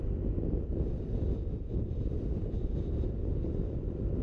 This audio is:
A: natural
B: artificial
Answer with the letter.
B